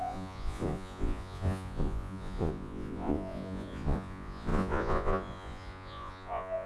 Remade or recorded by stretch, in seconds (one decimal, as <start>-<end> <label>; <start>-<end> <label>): 0.0-6.7 remade